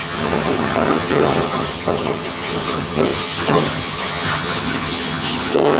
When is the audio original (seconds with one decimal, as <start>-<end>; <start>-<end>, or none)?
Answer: none